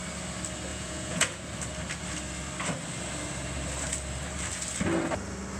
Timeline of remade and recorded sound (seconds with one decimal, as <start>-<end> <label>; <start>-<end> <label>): 0.0-0.7 recorded; 0.7-1.4 remade; 1.4-5.6 recorded